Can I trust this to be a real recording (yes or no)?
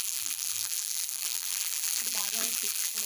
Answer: no